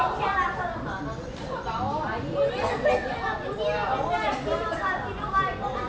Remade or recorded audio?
recorded